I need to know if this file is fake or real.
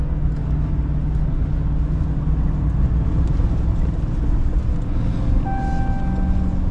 real